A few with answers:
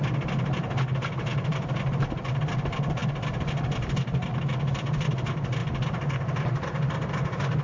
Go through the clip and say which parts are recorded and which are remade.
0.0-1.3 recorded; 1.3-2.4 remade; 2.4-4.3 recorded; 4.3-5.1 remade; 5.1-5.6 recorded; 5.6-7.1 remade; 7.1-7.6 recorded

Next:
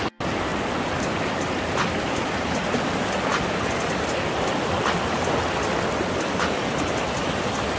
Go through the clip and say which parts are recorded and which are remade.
0.0-7.8 recorded